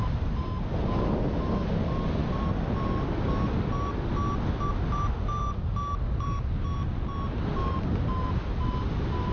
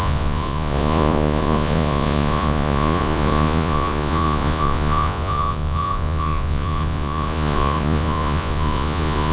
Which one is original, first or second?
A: first